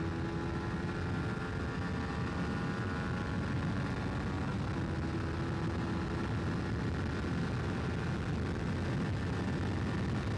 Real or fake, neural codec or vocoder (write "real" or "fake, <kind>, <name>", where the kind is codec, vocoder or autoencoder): real